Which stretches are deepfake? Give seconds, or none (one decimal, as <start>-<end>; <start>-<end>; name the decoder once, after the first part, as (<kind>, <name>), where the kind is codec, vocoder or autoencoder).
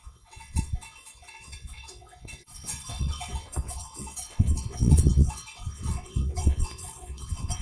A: 0.0-7.6 (vocoder, WaveNeXt)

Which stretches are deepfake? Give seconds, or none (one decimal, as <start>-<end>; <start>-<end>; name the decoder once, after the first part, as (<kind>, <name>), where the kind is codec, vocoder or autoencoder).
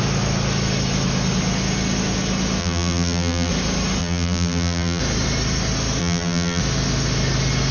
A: 2.6-3.5 (vocoder, BigVGAN v2); 4.0-5.0; 6.0-6.6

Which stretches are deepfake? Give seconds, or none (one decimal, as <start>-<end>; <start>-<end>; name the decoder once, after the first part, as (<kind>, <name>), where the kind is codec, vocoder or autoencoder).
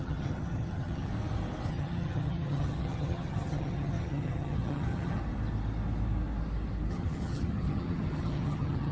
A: 0.0-1.1 (vocoder, HiFi-GAN); 1.7-5.2; 6.9-8.9